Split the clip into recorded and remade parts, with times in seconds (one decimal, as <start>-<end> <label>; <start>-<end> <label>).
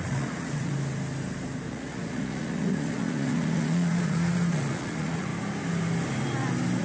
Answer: 0.0-0.7 remade; 0.7-1.7 recorded; 1.7-5.3 remade; 5.3-6.8 recorded